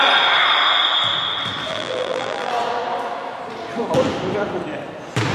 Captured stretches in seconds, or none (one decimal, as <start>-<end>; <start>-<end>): 0.0-1.7; 2.5-5.3